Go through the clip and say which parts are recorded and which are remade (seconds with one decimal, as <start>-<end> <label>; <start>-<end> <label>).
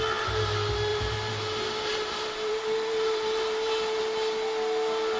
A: 0.0-0.9 recorded; 0.9-4.0 remade; 4.0-5.2 recorded